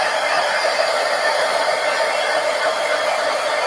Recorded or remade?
remade